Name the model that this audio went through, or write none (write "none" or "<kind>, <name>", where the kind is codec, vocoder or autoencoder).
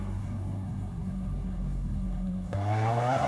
codec, SNAC